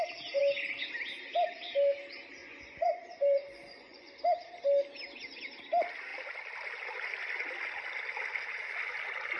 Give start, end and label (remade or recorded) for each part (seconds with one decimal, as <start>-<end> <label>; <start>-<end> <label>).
0.0-2.4 recorded; 2.4-4.1 remade; 4.1-9.4 recorded